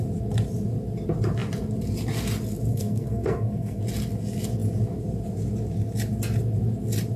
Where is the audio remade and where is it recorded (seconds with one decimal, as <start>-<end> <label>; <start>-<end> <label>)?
0.0-2.7 recorded; 2.7-3.8 remade; 3.8-7.2 recorded